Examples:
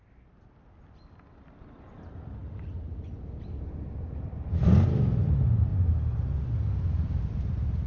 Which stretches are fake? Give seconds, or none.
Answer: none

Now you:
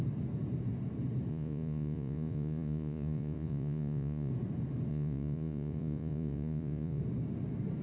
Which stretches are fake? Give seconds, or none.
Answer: 1.3-4.3 (vocoder, Vocos); 4.9-7.0

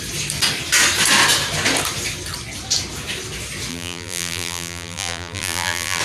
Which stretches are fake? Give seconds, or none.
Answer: 3.7-6.0 (vocoder, BigVGAN v2)

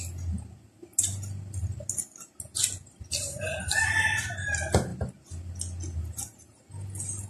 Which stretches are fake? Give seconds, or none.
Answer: none

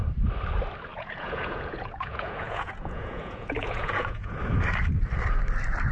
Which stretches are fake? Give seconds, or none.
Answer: 0.9-4.4 (vocoder, Vocos)

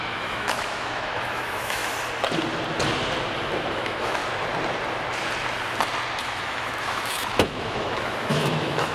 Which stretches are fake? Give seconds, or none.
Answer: 0.0-1.8 (autoencoder, DAC-VAE); 3.7-4.2; 6.2-8.9